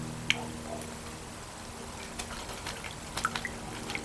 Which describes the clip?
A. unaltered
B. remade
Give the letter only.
A